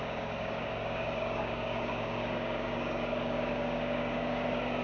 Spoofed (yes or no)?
yes